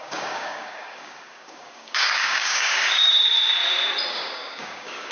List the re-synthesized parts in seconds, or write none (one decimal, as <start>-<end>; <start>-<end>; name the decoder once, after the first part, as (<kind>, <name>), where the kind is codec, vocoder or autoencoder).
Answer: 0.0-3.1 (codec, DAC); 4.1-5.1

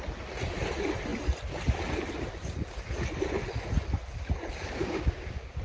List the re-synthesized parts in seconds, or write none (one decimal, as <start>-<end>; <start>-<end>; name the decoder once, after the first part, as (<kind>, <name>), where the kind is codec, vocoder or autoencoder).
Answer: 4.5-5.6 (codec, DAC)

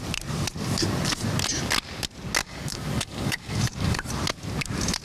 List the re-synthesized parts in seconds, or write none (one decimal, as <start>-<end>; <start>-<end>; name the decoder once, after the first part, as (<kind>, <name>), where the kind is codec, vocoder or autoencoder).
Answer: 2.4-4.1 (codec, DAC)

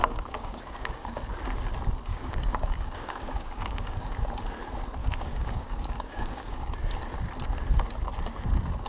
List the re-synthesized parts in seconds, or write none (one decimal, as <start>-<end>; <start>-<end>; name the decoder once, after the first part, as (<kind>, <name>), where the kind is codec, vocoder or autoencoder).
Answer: 0.0-1.2 (codec, DAC); 2.1-4.2; 5.0-6.7

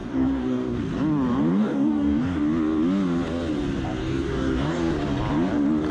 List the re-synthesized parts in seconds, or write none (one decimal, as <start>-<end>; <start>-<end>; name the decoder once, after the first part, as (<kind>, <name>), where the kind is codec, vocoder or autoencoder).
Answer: 0.0-0.8 (codec, DAC); 1.5-2.4; 4.0-4.9

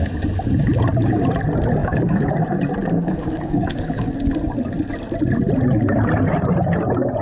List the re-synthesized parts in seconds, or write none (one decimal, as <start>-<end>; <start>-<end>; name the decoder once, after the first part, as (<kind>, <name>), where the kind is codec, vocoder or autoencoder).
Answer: 1.8-2.3 (codec, DAC); 2.8-4.1

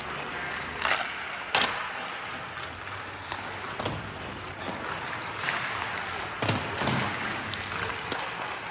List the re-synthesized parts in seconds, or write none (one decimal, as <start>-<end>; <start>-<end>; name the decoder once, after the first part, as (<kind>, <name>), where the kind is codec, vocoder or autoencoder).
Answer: 7.1-7.6 (codec, DAC)